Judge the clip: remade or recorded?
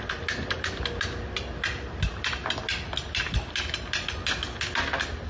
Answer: recorded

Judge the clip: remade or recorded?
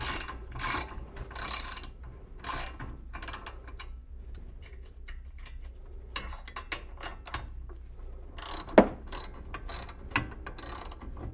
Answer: recorded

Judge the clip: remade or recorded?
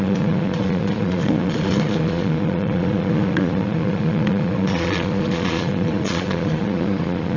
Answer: remade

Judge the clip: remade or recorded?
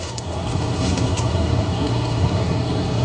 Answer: remade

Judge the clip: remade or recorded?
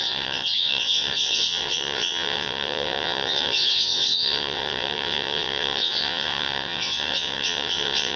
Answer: remade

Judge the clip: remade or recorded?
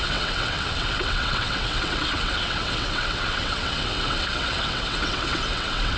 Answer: remade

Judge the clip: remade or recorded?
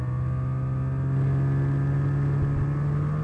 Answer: recorded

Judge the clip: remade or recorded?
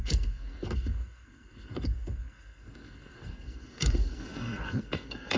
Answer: remade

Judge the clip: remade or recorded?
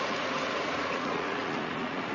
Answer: remade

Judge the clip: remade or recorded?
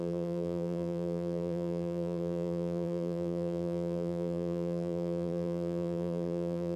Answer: remade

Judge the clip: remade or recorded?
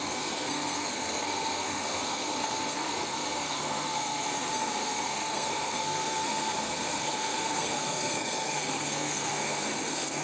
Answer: remade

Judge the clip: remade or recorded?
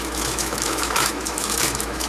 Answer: remade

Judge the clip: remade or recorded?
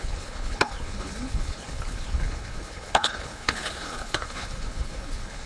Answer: remade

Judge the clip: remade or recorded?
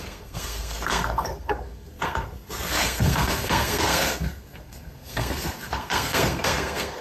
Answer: remade